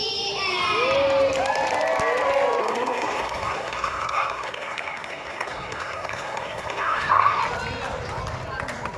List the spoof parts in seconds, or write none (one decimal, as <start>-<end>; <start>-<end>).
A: 2.6-7.4